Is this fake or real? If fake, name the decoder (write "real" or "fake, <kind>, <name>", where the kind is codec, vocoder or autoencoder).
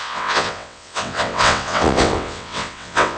fake, vocoder, WaveNeXt